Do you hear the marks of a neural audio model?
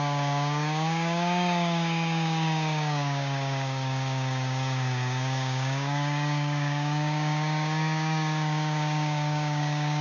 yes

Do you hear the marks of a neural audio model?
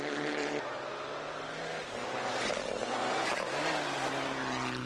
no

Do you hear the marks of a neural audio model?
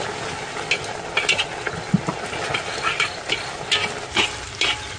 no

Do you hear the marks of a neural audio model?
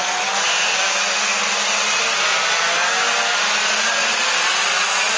no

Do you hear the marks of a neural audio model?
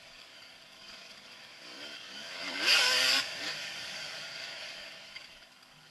yes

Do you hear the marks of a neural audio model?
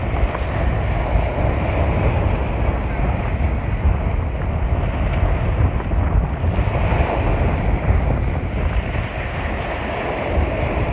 no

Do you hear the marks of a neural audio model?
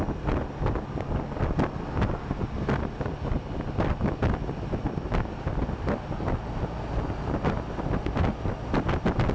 no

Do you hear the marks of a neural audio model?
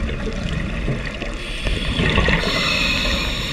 no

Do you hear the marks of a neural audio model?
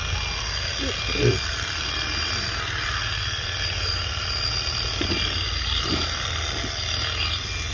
no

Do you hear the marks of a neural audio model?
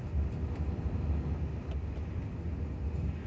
no